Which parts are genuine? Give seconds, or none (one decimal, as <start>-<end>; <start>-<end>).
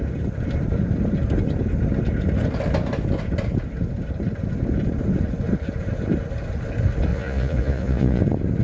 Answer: 0.0-7.1; 8.2-8.6